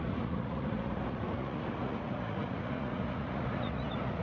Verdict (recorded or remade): remade